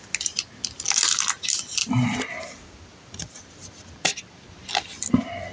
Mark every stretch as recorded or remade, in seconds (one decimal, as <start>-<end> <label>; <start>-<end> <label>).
0.0-1.8 recorded; 1.8-4.5 remade; 4.5-5.5 recorded